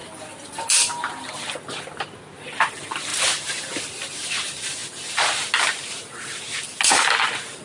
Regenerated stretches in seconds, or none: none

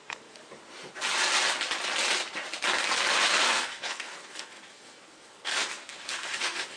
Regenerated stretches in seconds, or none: 0.0-0.4 (codec, SNAC); 3.4-6.8

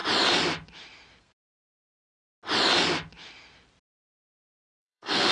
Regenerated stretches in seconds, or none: 1.2-2.1 (codec, SNAC); 3.8-5.3

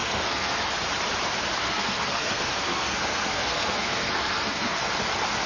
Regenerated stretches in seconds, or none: 0.0-0.7 (codec, SNAC); 1.6-4.9

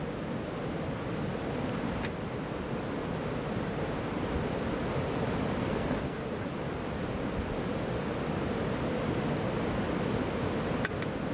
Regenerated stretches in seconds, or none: 5.6-6.2 (codec, SNAC)

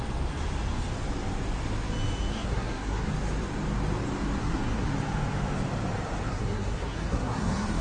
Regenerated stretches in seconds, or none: 2.3-3.1 (codec, SNAC); 4.4-4.9; 6.3-7.8